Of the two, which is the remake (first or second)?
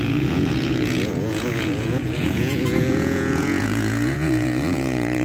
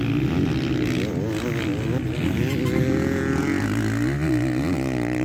first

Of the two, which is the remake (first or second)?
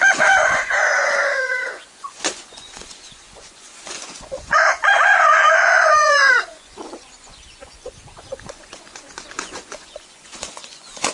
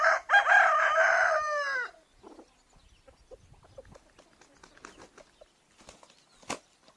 first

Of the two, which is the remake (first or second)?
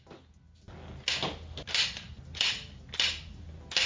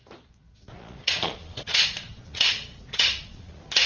second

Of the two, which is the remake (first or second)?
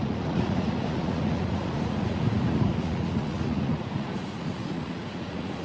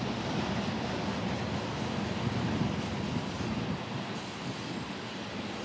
first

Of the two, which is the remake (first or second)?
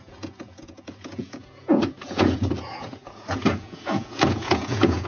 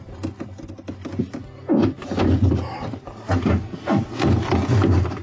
first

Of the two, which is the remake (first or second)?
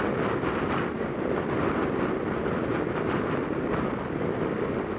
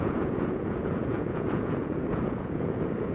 second